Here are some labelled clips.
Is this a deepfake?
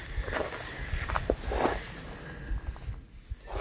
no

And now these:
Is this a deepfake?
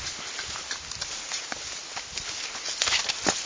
no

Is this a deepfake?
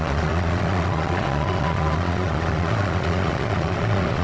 yes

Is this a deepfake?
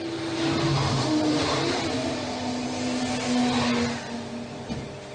no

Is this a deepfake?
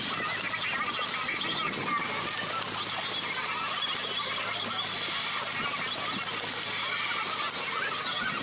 no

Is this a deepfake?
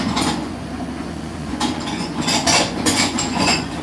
yes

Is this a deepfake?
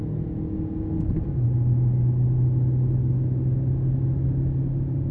no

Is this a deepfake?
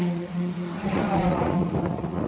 yes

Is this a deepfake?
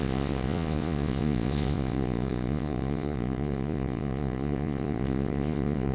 yes